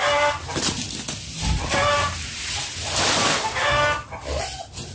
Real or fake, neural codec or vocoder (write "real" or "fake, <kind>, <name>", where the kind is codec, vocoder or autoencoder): real